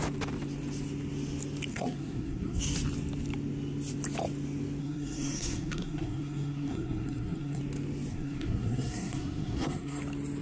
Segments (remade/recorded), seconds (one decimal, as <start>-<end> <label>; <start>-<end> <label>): 0.0-1.7 recorded; 1.7-2.6 remade; 2.6-4.8 recorded; 4.8-7.6 remade; 7.6-8.1 recorded; 8.1-10.0 remade; 10.0-10.4 recorded